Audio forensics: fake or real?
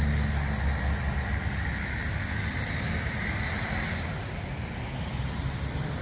real